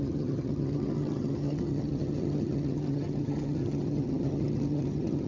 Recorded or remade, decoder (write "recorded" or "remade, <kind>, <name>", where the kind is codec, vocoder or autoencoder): remade, vocoder, HiFi-GAN